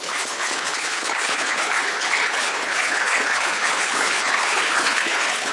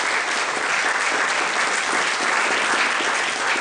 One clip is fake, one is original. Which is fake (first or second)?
first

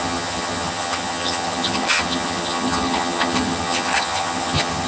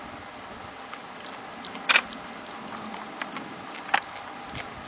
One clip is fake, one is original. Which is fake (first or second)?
first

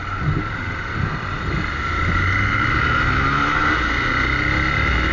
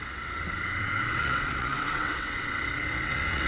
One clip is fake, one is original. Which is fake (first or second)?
second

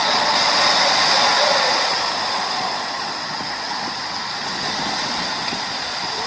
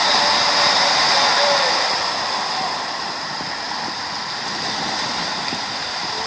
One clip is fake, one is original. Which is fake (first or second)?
first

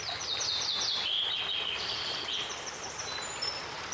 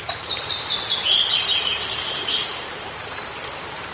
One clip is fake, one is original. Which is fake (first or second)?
second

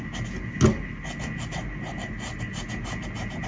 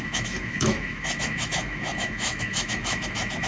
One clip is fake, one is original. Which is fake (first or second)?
second